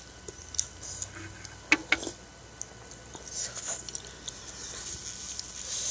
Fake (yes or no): no